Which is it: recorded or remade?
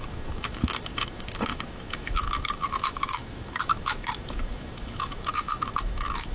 remade